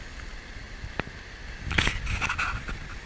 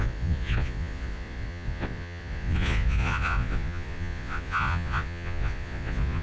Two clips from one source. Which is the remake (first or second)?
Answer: second